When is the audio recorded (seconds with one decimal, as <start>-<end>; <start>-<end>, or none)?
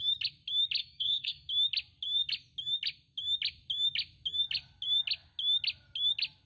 0.0-0.8; 1.5-6.5